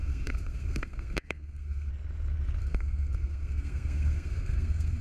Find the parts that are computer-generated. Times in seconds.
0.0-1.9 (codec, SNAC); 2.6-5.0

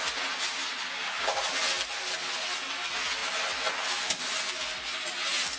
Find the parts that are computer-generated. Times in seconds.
none